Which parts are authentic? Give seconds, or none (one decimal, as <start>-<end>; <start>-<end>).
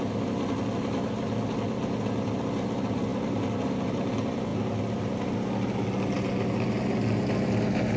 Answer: 0.0-8.0